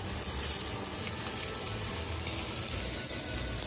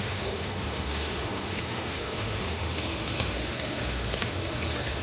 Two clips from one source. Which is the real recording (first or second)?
first